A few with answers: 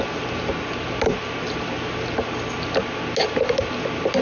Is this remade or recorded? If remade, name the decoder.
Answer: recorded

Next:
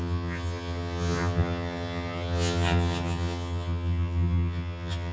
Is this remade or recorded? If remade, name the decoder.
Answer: remade, vocoder, HiFi-GAN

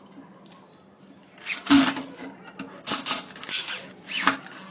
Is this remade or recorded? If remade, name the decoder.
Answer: recorded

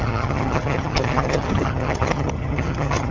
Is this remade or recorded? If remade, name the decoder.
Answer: remade, vocoder, HiFi-GAN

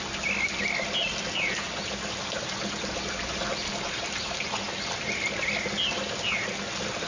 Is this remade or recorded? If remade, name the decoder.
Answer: recorded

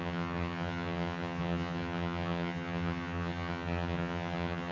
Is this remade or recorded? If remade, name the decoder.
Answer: remade, vocoder, HiFi-GAN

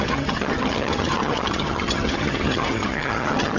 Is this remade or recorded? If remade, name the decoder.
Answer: remade, vocoder, HiFi-GAN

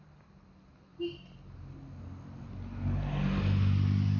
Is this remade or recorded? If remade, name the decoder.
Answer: recorded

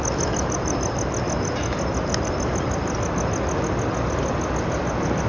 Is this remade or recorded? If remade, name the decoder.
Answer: recorded